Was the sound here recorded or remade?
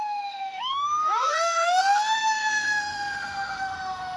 remade